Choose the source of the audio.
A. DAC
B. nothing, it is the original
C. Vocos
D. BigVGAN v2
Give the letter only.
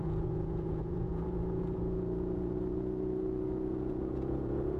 C